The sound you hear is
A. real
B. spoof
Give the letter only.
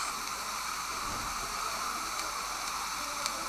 B